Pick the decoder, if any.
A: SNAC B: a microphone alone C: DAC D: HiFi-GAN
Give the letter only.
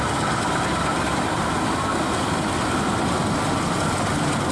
B